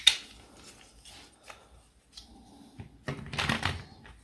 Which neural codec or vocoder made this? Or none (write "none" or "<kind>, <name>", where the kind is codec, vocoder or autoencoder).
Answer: none